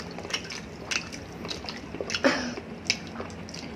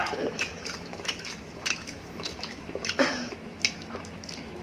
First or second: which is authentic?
first